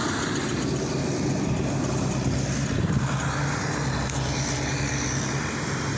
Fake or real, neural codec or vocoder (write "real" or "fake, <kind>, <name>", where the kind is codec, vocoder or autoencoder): real